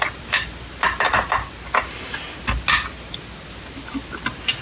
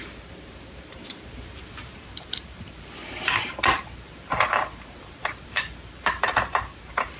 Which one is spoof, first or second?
second